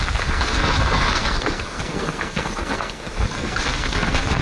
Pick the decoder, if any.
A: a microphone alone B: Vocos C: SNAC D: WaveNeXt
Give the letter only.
C